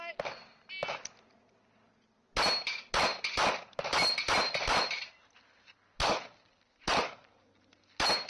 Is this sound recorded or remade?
recorded